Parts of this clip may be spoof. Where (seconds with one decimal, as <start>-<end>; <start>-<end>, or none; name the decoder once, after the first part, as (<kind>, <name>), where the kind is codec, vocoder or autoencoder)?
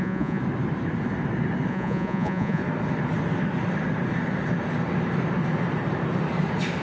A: 0.0-0.4 (vocoder, Vocos); 1.7-2.6